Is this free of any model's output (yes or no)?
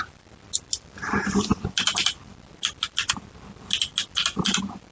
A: yes